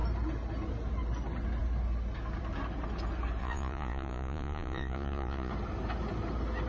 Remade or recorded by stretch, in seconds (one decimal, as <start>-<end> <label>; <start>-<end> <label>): 0.0-3.4 recorded; 3.4-5.5 remade; 5.5-6.7 recorded

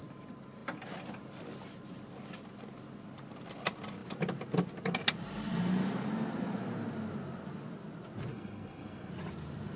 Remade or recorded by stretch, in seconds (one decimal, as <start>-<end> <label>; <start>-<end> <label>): 0.0-8.3 recorded; 8.3-9.1 remade; 9.1-9.8 recorded

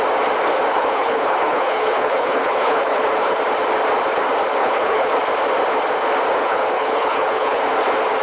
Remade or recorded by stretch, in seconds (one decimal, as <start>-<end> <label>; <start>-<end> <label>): 0.0-0.7 recorded; 0.7-3.4 remade; 3.4-4.6 recorded; 4.6-5.1 remade; 5.1-6.4 recorded; 6.4-7.6 remade; 7.6-8.2 recorded